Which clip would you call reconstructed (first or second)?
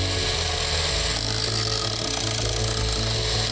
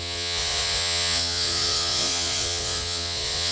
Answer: second